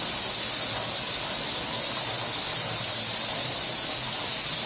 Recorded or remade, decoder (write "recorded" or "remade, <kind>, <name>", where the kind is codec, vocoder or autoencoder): recorded